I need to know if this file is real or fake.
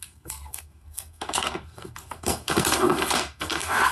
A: fake